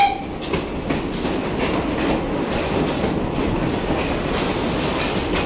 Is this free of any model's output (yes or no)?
yes